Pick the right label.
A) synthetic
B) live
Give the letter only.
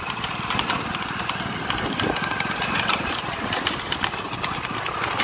B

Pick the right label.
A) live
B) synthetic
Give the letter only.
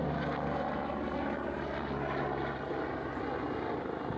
A